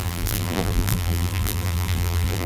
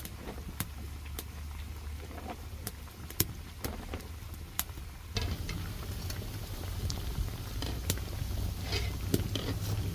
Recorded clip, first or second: second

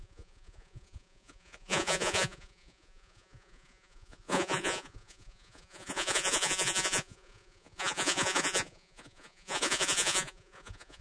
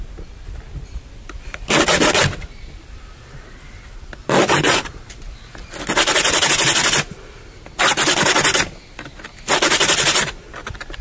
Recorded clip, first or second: second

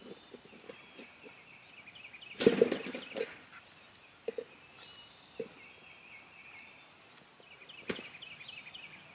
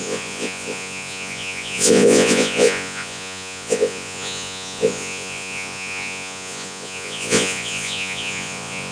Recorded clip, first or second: first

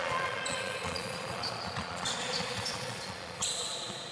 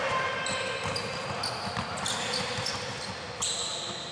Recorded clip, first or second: second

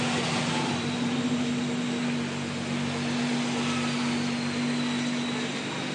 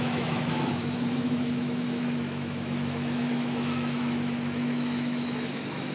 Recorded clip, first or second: first